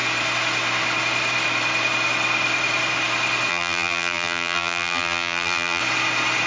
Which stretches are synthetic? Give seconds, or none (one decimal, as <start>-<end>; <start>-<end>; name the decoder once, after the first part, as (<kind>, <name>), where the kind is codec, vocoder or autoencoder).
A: 3.5-5.8 (vocoder, BigVGAN v2)